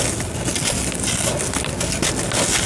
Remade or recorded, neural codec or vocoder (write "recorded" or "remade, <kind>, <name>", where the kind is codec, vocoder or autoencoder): recorded